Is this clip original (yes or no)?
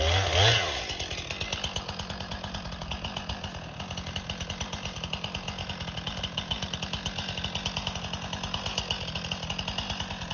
yes